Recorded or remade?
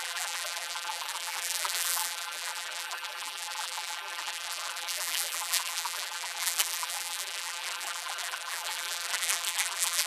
remade